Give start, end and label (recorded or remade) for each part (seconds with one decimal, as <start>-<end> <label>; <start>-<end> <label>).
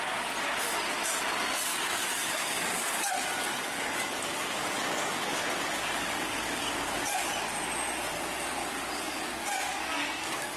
0.0-1.7 recorded; 1.7-3.0 remade; 3.0-3.4 recorded; 3.4-7.3 remade; 7.3-8.6 recorded; 8.6-10.6 remade